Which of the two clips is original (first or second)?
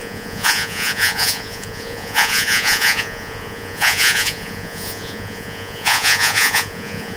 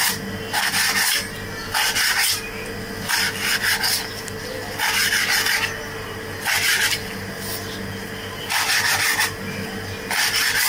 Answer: second